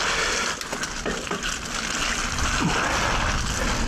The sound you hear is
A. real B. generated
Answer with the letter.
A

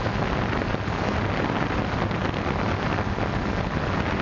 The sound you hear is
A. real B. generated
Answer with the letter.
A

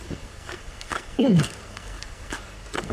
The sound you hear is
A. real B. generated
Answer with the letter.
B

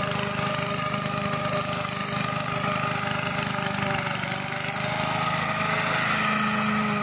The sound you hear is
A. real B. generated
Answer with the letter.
A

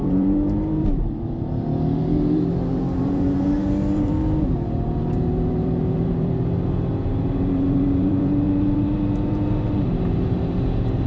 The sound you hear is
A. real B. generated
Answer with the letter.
B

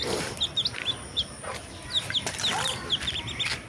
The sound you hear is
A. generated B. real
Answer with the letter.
B